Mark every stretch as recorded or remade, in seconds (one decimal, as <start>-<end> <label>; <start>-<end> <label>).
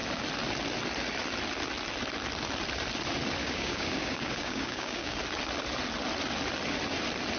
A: 0.0-3.4 recorded; 3.4-5.2 remade; 5.2-7.4 recorded